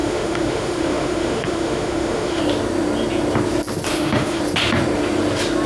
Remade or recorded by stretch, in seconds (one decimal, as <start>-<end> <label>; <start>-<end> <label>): 0.0-2.4 remade; 2.4-3.9 recorded; 3.9-4.4 remade; 4.4-5.7 recorded